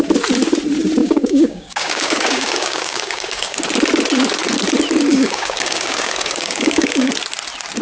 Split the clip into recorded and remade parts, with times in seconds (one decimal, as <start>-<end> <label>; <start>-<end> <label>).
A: 0.0-1.0 recorded; 1.0-3.6 remade; 3.6-5.1 recorded; 5.1-7.1 remade; 7.1-7.8 recorded